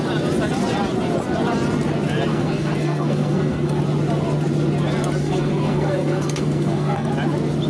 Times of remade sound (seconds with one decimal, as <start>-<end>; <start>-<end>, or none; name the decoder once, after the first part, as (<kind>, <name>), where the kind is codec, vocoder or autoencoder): 2.3-3.8 (codec, SNAC); 5.2-7.1